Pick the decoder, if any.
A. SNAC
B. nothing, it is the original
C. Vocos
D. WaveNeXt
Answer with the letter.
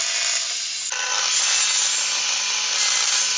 B